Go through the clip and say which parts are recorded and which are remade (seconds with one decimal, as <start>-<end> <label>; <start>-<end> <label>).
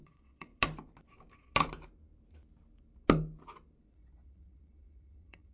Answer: 0.0-0.5 remade; 0.5-3.8 recorded; 3.8-5.5 remade